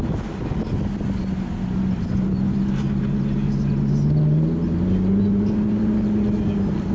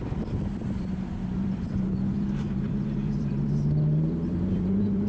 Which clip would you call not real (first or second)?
second